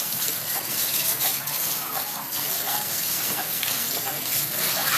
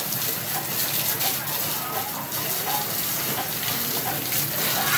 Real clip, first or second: second